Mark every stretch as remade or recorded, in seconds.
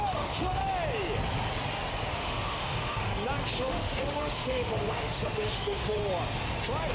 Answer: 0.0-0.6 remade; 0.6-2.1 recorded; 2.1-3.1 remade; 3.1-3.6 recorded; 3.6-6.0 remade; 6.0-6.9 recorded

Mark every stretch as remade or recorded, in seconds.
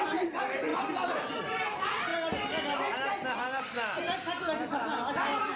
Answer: 0.0-0.7 remade; 0.7-1.4 recorded; 1.4-2.1 remade; 2.1-5.6 recorded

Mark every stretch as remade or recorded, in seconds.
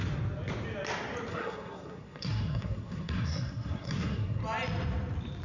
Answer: 0.0-1.3 recorded; 1.3-4.4 remade; 4.4-5.4 recorded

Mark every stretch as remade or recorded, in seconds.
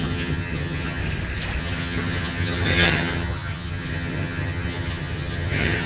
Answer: 0.0-1.0 remade; 1.0-1.6 recorded; 1.6-5.9 remade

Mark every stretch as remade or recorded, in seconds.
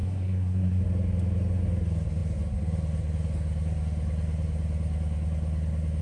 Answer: 0.0-0.8 remade; 0.8-6.0 recorded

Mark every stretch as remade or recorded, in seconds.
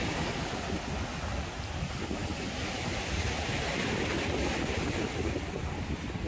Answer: 0.0-2.2 recorded; 2.2-4.2 remade; 4.2-6.3 recorded